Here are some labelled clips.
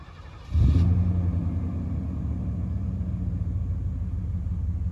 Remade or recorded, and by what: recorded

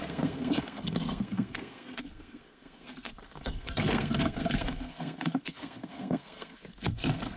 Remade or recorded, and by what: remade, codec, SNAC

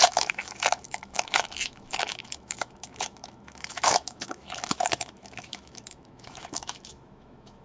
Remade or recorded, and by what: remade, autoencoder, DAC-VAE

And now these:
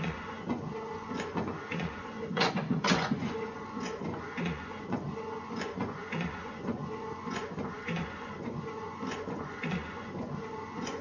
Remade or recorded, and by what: remade, vocoder, Vocos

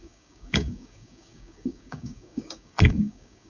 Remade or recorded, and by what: remade, codec, DAC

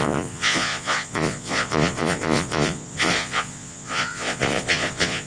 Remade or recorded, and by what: remade, vocoder, Vocos